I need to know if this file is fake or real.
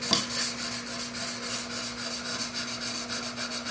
real